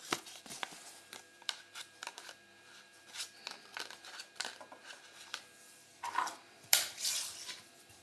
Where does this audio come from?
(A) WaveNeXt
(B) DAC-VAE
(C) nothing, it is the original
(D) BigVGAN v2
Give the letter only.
D